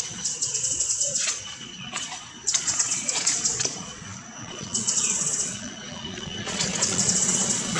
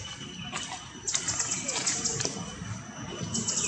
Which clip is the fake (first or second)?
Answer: first